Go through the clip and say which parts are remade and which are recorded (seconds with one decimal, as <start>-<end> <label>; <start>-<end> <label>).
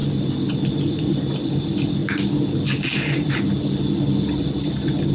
0.0-5.1 recorded